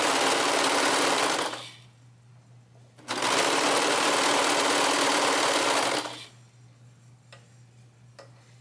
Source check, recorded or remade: recorded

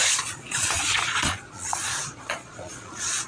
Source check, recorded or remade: remade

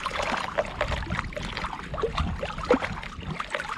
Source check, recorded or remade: recorded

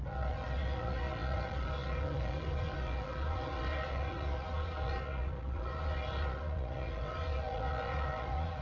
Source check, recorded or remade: remade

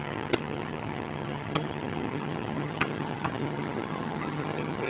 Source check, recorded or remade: remade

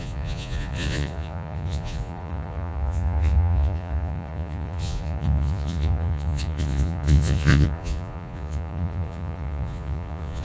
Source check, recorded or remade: remade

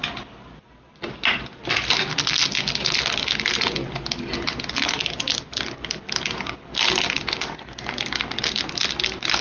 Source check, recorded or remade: recorded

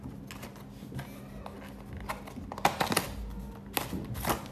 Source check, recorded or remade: recorded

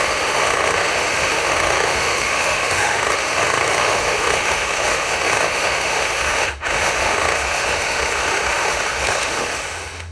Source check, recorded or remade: remade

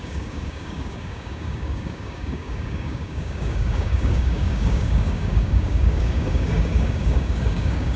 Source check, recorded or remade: remade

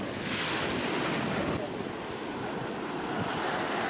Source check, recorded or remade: recorded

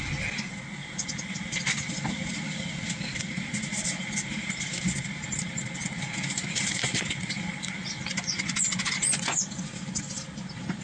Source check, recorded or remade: recorded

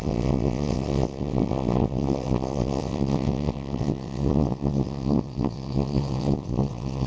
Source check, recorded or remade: remade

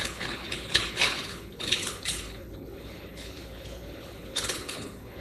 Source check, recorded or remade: remade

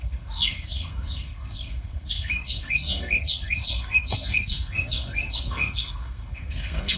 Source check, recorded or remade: remade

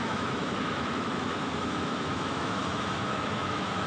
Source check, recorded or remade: remade